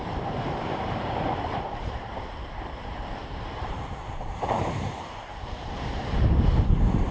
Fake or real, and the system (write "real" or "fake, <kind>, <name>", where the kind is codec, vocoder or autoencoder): fake, vocoder, BigVGAN v2